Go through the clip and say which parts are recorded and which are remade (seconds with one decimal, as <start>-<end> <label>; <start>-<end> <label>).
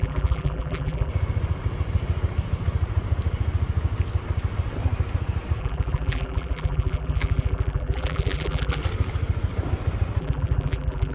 0.0-1.1 remade; 1.1-5.6 recorded; 5.6-8.8 remade; 8.8-10.2 recorded; 10.2-11.1 remade